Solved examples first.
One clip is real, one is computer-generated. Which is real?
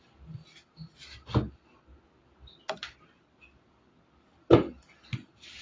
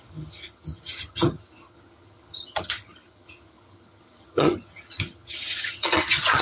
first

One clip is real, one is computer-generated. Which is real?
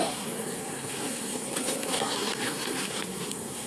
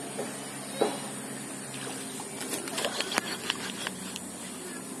second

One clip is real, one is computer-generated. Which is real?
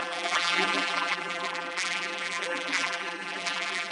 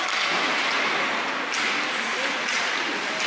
second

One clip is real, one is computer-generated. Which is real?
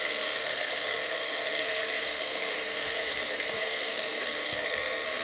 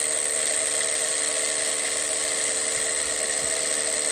second